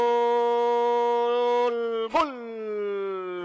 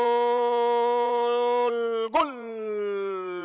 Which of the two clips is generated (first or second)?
second